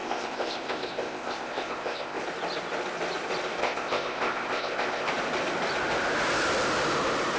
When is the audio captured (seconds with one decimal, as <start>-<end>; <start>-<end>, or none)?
2.2-3.6; 5.1-7.4